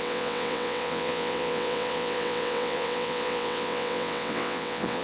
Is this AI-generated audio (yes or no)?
yes